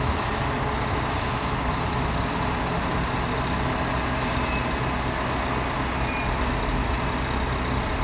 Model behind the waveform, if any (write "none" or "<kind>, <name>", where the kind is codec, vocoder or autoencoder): none